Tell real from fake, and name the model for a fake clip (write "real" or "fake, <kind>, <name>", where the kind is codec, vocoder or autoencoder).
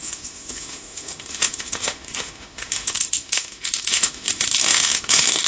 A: fake, autoencoder, DAC-VAE